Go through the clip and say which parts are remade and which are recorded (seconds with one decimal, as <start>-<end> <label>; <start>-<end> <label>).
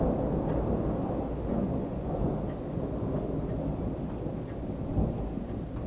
0.0-1.5 recorded; 1.5-2.3 remade; 2.3-5.9 recorded